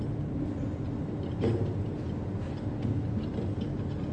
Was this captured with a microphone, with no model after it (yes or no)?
yes